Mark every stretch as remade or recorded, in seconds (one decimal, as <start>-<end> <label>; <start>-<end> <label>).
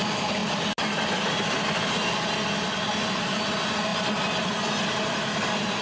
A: 0.0-5.8 recorded